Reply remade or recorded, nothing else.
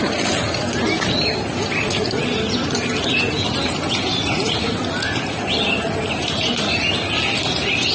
recorded